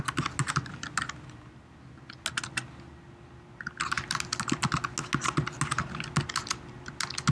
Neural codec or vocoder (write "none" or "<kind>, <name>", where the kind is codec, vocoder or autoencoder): none